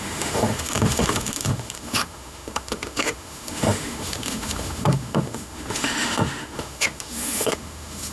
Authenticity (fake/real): fake